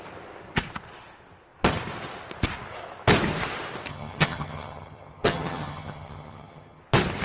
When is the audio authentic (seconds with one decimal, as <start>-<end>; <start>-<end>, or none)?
0.0-3.9; 6.8-7.2